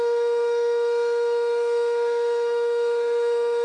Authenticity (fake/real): fake